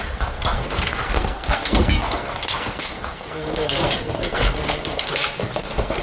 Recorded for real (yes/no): no